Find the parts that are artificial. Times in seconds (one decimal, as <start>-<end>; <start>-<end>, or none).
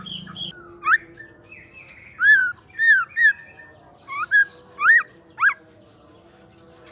none